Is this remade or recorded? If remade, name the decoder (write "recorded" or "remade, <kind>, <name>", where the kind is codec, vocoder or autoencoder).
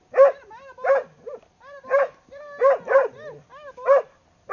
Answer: recorded